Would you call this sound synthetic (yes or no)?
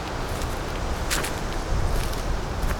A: no